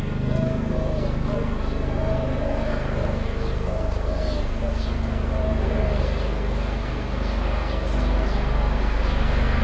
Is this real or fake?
fake